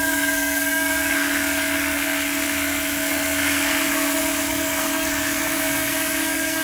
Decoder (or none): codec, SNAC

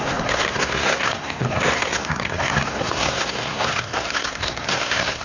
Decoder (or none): codec, SNAC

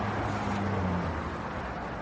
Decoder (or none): none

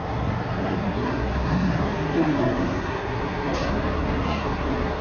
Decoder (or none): codec, SNAC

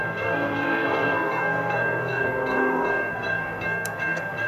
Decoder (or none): codec, SNAC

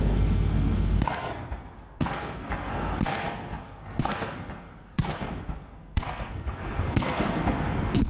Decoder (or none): codec, SNAC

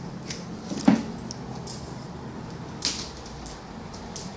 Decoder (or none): none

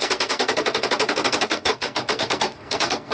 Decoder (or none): codec, SNAC